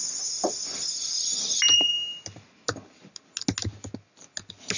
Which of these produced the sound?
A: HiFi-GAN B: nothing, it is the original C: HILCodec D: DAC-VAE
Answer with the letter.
B